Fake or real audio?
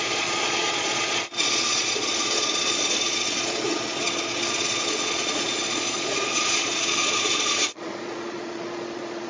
fake